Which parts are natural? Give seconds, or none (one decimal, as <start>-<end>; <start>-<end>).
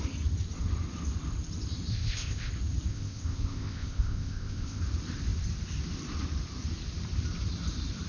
0.0-1.9; 2.5-2.9; 4.8-8.1